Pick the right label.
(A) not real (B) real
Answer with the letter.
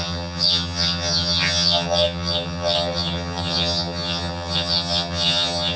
A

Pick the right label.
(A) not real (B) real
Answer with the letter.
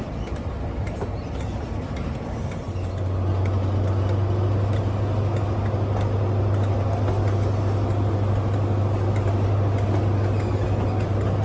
B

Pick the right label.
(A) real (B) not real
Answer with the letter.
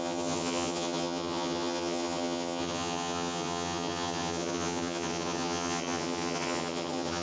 B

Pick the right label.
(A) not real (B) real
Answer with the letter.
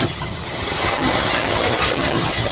A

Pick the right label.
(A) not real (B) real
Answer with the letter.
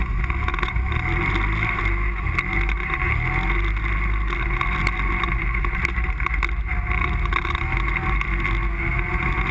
B